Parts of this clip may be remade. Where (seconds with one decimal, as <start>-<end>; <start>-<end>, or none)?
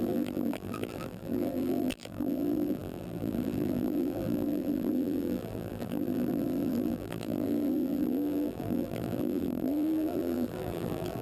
0.0-11.2